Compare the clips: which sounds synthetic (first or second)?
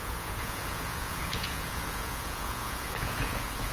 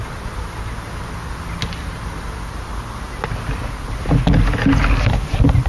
first